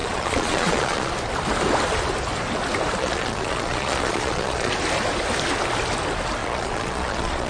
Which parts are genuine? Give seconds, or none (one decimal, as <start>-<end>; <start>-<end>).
1.1-3.0; 4.7-6.4